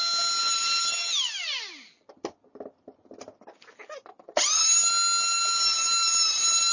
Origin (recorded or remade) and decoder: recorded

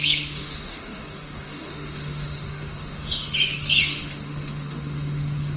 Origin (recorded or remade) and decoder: remade, autoencoder, DAC-VAE